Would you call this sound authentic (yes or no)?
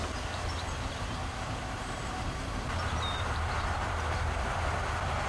no